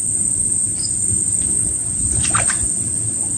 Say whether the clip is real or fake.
real